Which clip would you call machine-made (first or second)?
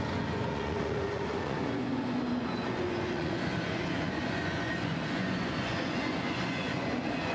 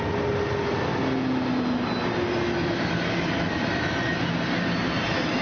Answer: first